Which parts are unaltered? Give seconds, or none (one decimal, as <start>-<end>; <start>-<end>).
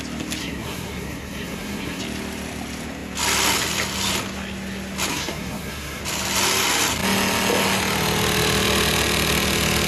0.0-0.4; 2.0-5.1; 6.0-9.9